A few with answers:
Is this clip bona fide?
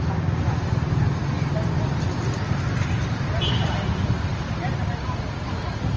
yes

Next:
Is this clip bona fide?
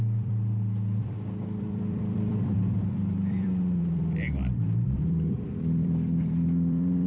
no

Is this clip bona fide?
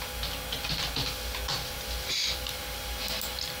yes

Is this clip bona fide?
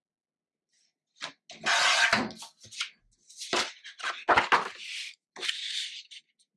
yes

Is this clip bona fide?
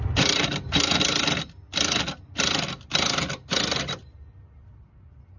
yes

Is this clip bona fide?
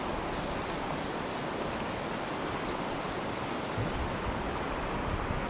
yes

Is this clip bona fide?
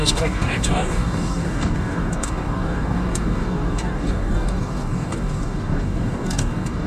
no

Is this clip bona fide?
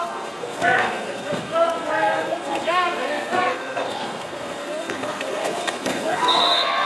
no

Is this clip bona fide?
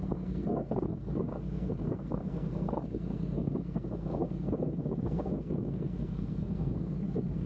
no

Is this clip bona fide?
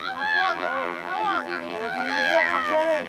no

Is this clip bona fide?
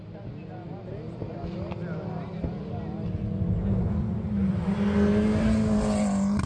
yes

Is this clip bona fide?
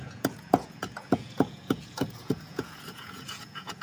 no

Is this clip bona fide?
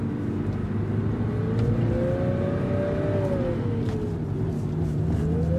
yes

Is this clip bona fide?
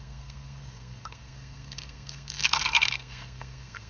no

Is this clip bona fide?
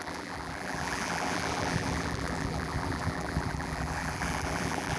no